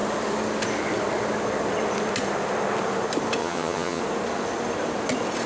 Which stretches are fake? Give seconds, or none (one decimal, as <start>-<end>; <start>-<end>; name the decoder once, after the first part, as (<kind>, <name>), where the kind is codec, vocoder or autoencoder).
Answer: 3.4-4.0 (vocoder, HiFi-GAN)